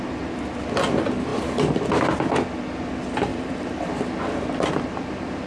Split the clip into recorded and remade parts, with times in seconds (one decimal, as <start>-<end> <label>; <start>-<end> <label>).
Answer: 0.0-3.3 recorded; 3.3-3.9 remade; 3.9-5.5 recorded